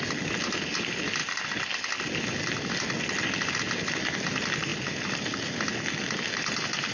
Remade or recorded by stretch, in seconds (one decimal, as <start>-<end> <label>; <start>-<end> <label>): 0.0-6.9 recorded